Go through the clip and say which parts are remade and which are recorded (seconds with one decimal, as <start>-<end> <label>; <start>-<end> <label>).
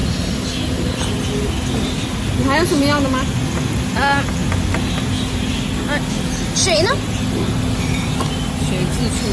0.0-9.3 recorded